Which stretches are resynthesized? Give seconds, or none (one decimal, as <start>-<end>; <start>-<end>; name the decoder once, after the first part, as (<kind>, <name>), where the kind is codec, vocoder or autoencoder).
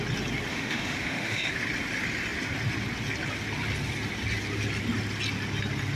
0.5-1.5 (autoencoder, DAC-VAE)